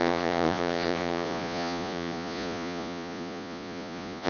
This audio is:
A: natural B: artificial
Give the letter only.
B